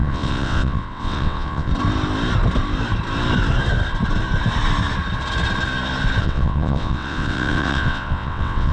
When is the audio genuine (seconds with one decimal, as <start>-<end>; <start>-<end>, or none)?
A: 1.7-6.2